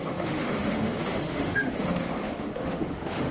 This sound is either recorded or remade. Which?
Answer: remade